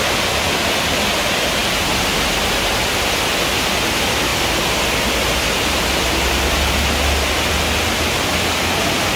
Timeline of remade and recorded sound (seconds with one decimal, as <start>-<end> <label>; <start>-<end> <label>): 0.0-9.2 recorded